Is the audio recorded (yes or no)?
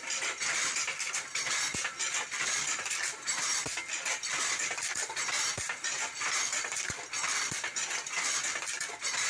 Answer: no